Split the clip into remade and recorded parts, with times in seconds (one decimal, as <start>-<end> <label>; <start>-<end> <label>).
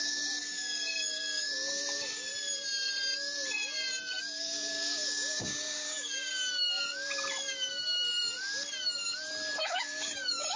0.0-2.3 remade; 2.3-4.2 recorded; 4.2-6.3 remade; 6.3-9.6 recorded; 9.6-10.6 remade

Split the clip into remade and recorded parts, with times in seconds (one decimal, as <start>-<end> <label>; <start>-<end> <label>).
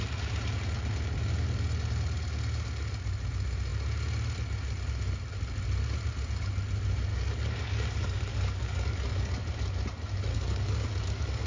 0.0-7.1 recorded; 7.1-9.3 remade; 9.3-10.3 recorded; 10.3-11.5 remade